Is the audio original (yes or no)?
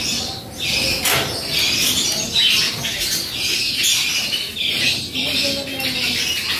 yes